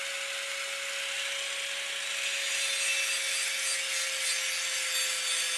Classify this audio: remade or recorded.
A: recorded